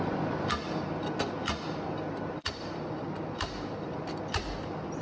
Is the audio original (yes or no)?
yes